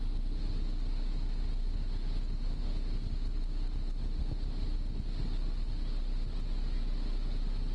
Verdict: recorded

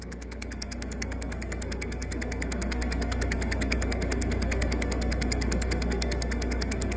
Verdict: remade